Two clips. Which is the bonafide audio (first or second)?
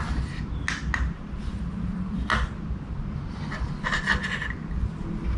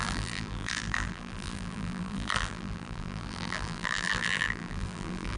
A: first